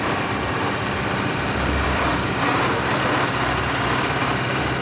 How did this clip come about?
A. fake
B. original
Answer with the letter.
A